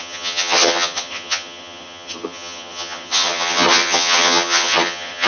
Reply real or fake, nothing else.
fake